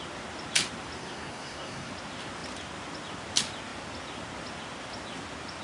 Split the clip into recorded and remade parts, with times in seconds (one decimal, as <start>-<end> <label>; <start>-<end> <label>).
0.0-1.0 recorded; 1.0-1.9 remade; 1.9-5.6 recorded